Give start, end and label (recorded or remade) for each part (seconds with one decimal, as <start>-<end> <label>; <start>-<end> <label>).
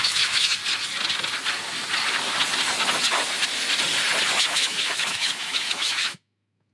0.0-0.6 remade; 0.6-4.4 recorded; 4.4-6.7 remade